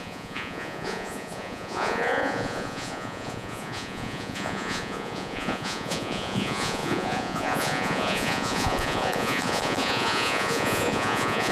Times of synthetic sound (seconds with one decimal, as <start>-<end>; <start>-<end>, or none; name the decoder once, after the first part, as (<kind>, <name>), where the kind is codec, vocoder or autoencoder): 0.0-11.5 (vocoder, Vocos)